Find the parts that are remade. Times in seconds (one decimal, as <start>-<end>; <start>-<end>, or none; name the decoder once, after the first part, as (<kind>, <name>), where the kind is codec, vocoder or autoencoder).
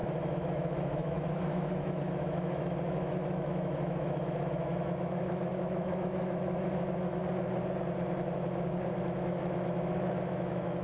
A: 0.0-7.2 (autoencoder, DAC-VAE); 8.9-10.8